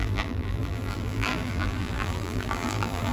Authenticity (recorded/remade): remade